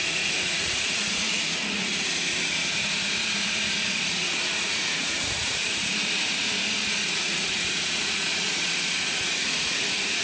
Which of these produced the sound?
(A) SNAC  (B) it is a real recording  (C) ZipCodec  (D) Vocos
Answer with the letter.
D